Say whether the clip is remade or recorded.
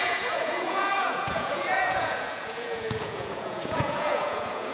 remade